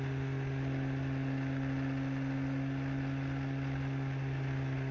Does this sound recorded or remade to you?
recorded